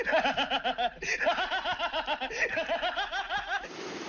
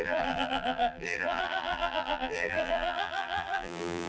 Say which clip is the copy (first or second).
second